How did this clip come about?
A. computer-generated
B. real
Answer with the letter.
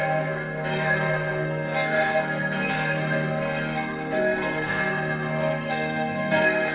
A